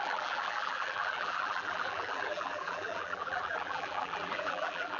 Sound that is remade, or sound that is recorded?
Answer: remade